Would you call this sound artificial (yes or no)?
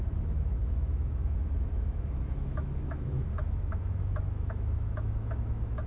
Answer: yes